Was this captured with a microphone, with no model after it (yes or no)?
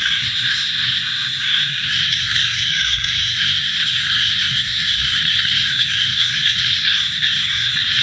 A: no